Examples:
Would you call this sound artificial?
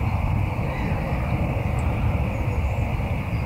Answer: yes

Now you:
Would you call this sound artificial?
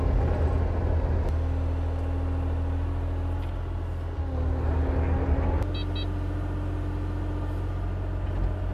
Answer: no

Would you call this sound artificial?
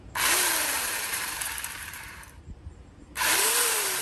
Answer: yes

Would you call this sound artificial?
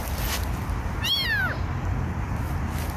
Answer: no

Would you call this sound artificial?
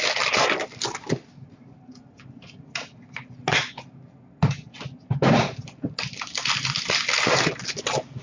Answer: no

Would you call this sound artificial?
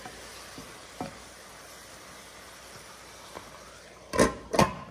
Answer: no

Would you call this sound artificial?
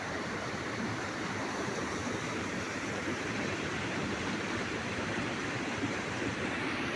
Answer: yes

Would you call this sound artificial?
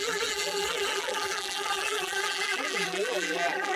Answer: yes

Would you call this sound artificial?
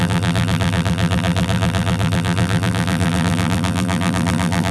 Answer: yes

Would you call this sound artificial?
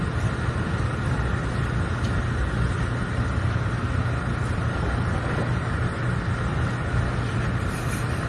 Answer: no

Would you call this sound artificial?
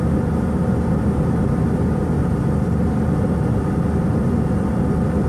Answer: no